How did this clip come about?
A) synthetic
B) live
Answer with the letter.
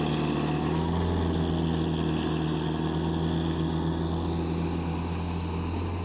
B